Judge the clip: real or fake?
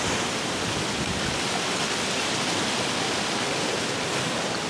real